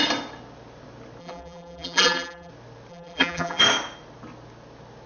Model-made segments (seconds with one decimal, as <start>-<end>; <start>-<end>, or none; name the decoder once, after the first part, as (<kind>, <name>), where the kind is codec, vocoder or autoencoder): 1.2-2.5 (vocoder, BigVGAN v2); 2.9-3.6